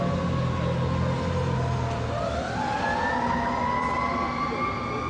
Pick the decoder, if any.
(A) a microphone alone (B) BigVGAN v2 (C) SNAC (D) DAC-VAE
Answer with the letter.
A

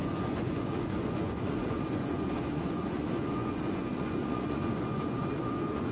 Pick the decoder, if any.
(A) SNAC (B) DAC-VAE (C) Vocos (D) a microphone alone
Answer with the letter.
C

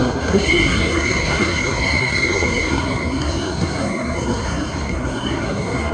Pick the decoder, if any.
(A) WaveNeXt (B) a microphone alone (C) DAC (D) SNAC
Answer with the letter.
D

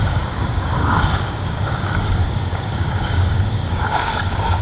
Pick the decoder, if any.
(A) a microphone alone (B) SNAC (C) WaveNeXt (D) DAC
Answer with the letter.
D